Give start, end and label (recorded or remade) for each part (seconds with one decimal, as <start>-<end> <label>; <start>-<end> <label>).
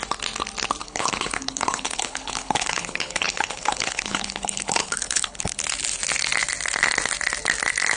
0.0-0.8 recorded; 0.8-5.6 remade; 5.6-8.0 recorded